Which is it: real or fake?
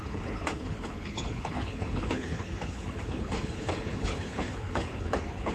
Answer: fake